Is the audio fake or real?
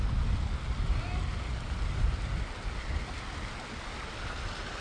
real